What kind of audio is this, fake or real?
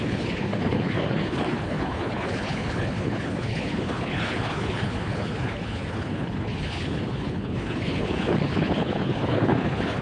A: fake